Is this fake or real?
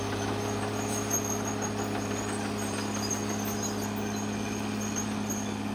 real